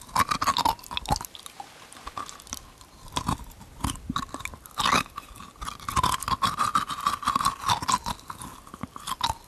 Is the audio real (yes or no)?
yes